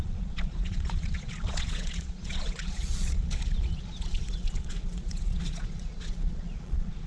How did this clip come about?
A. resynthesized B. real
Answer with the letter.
A